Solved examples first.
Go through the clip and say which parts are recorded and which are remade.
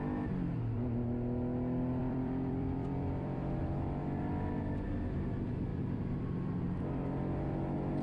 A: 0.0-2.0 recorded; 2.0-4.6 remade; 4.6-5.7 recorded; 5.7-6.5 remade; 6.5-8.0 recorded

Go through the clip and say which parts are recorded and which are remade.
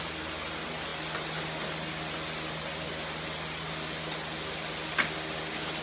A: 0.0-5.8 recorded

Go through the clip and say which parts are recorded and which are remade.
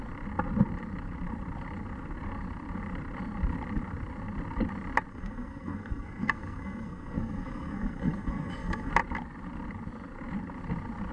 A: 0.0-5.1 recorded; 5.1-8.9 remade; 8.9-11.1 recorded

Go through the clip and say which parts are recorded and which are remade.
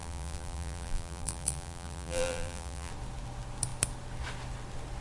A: 0.0-2.9 remade; 2.9-5.0 recorded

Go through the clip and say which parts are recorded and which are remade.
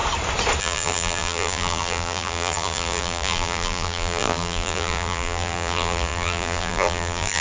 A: 0.0-0.6 recorded; 0.6-7.4 remade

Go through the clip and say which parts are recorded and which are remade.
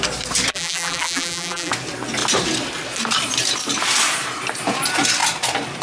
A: 0.0-0.5 recorded; 0.5-1.7 remade; 1.7-5.8 recorded